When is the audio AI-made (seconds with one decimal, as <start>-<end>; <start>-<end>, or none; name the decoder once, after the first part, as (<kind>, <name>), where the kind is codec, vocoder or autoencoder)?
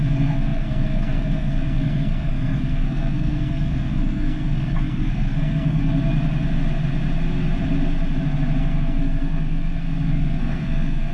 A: 0.0-5.8 (codec, SNAC); 8.6-11.1